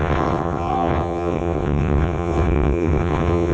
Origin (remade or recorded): remade